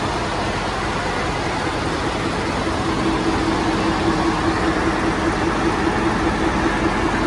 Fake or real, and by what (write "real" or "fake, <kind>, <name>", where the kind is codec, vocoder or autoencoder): real